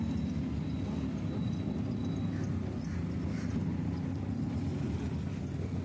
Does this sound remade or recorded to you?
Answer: recorded